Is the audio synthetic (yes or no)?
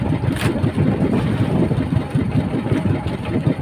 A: no